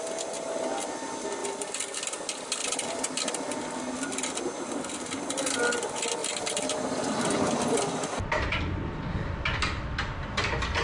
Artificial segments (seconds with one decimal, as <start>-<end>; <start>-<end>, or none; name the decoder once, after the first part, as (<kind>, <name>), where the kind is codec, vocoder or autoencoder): 1.4-2.0 (vocoder, BigVGAN v2); 2.6-3.3; 6.2-8.6